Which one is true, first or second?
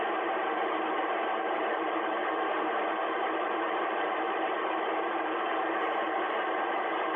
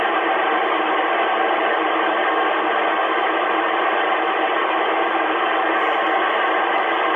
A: second